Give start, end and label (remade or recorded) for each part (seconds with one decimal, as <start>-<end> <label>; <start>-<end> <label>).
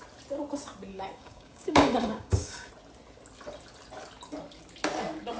0.0-0.9 recorded; 0.9-2.7 remade; 2.7-5.4 recorded